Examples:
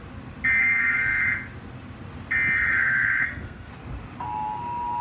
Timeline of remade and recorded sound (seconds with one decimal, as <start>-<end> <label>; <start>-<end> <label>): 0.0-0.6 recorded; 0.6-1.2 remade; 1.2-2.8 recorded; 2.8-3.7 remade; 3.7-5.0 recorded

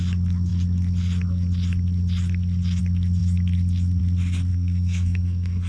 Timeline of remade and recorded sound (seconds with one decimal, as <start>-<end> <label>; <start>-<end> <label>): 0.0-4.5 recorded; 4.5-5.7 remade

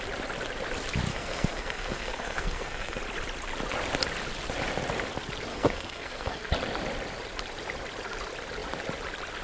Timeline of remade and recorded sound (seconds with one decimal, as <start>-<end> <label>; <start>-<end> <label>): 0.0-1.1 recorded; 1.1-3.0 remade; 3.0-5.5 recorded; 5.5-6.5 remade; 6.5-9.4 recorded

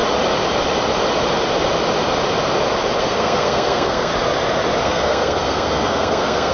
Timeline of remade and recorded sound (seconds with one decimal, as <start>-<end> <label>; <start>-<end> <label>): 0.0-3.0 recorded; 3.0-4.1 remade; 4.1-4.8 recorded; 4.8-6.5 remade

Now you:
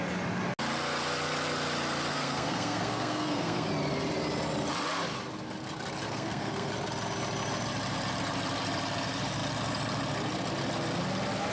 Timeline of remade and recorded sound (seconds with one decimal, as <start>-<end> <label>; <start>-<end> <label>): 0.0-2.1 recorded; 2.1-3.7 remade; 3.7-6.0 recorded; 6.0-6.7 remade; 6.7-11.5 recorded